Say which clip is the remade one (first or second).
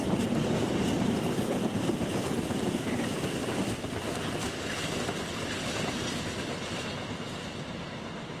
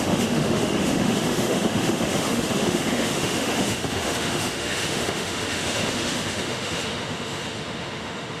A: second